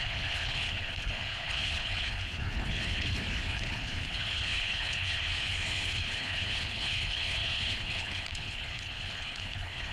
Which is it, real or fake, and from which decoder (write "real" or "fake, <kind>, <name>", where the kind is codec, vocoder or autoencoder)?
fake, codec, HILCodec